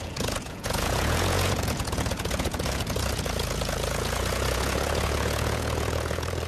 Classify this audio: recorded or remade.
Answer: remade